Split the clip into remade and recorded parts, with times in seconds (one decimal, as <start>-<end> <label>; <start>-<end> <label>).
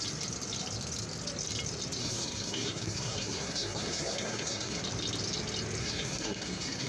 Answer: 0.0-2.0 recorded; 2.0-4.8 remade; 4.8-5.8 recorded; 5.8-6.9 remade